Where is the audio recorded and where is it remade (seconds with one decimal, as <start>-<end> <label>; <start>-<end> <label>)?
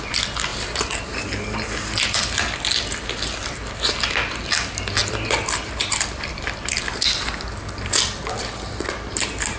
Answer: 0.0-0.5 recorded; 0.5-1.1 remade; 1.1-5.0 recorded; 5.0-9.6 remade